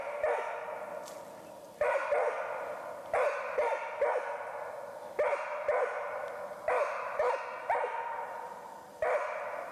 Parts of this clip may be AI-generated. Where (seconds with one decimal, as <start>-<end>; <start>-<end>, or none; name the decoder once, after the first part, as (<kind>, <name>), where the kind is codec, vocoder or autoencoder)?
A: none